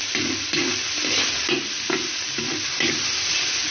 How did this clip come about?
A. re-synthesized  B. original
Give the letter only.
B